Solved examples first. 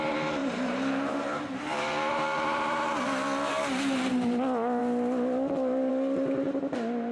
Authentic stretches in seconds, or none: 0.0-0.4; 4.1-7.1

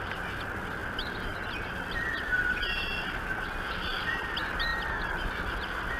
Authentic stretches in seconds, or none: 0.0-6.0

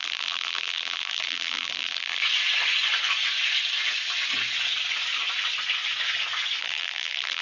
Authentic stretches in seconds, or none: 2.2-6.6

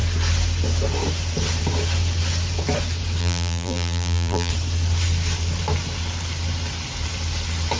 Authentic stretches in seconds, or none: 0.0-3.2; 4.5-7.8